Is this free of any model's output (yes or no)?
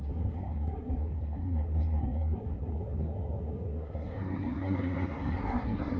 no